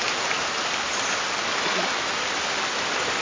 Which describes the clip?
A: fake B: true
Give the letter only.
B